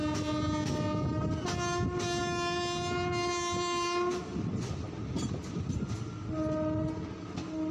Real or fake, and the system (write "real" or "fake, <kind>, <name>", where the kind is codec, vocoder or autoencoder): real